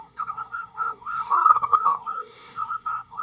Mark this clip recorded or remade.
remade